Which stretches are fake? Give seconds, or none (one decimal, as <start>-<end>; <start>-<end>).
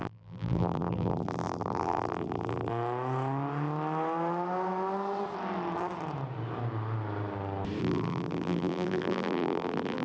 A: 0.0-2.7; 7.8-10.0